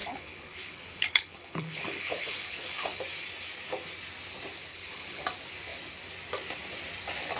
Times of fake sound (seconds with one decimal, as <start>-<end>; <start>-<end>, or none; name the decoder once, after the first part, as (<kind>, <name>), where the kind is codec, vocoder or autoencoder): 0.0-3.0 (codec, HILCodec); 4.7-5.2